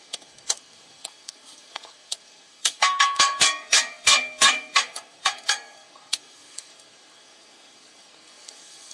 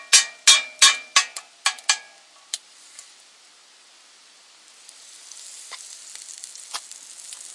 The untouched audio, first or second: second